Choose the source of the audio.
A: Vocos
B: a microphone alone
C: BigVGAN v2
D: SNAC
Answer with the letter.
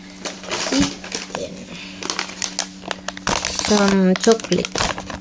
B